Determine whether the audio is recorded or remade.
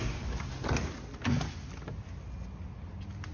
recorded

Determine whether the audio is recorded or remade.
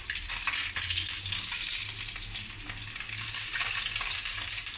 recorded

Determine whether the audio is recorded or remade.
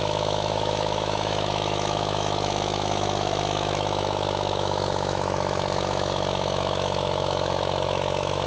remade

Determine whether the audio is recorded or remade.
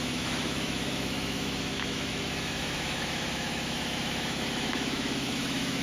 remade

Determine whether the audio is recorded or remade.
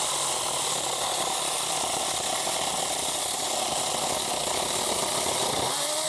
recorded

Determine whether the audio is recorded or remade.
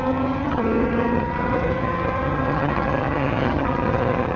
remade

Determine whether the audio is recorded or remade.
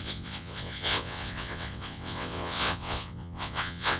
remade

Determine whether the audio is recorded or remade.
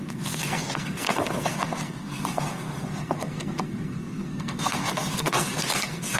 remade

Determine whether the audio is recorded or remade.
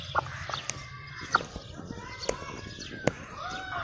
recorded